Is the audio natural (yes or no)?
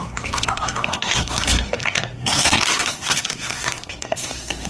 no